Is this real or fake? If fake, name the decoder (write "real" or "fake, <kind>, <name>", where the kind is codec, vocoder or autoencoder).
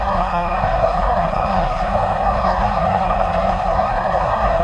fake, codec, SNAC